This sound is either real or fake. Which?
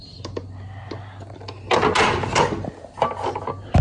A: real